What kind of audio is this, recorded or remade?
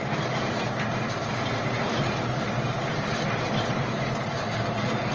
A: remade